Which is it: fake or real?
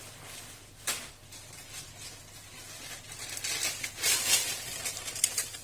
real